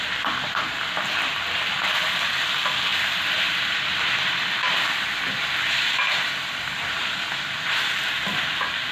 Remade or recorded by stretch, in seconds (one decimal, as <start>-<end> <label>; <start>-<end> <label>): 0.0-8.9 recorded